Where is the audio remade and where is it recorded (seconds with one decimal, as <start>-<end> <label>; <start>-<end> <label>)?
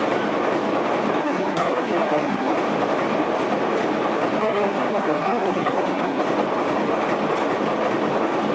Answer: 0.0-1.2 recorded; 1.2-2.5 remade; 2.5-4.4 recorded; 4.4-6.2 remade; 6.2-8.5 recorded